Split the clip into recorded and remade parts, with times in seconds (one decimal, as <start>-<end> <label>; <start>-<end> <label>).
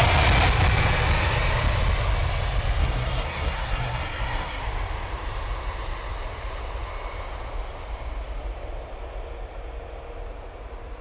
0.0-2.8 recorded; 2.8-4.6 remade; 4.6-11.0 recorded